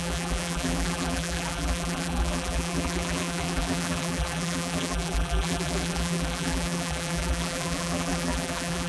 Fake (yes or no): yes